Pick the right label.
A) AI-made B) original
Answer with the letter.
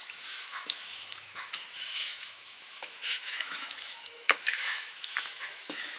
A